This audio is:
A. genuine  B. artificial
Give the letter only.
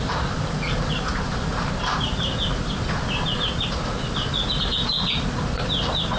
A